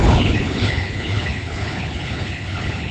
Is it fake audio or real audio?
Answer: fake